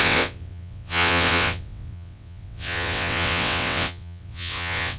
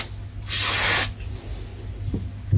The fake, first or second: first